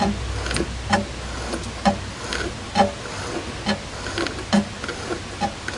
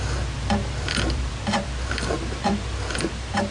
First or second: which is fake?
second